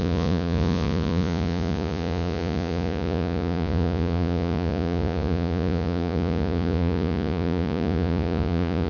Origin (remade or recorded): remade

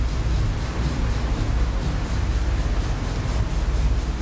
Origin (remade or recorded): recorded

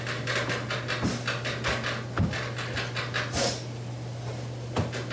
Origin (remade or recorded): recorded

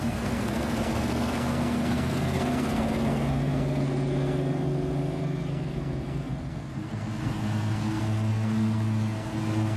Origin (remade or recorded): remade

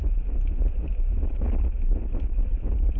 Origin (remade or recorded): recorded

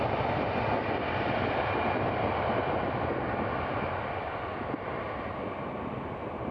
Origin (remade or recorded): recorded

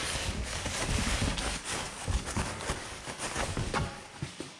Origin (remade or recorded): remade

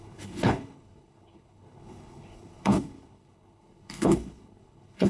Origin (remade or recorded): remade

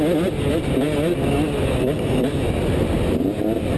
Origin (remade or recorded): recorded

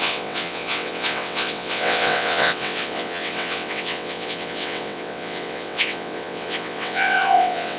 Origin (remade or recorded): remade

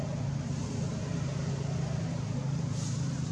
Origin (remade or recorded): recorded